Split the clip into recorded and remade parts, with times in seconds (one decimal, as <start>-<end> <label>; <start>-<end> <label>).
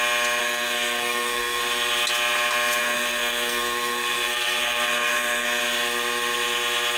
0.0-0.4 recorded; 0.4-1.6 remade; 1.6-2.8 recorded; 2.8-5.6 remade; 5.6-7.0 recorded